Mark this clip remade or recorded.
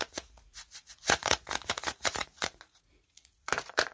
remade